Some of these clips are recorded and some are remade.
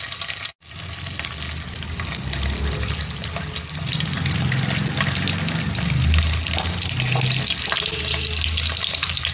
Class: recorded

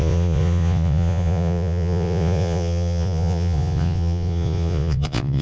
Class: remade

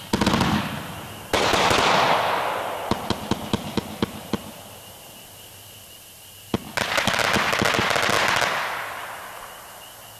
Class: recorded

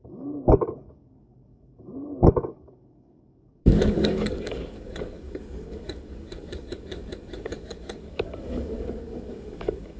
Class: remade